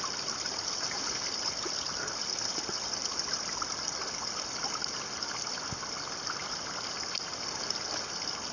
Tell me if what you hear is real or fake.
real